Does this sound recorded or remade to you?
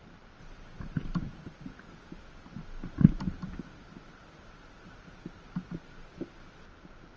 recorded